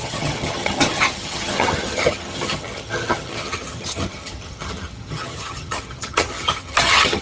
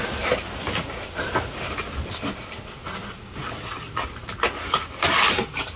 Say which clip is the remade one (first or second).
first